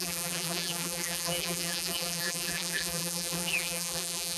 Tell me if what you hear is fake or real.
fake